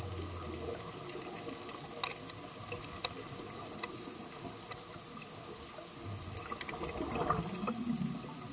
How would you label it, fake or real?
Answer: real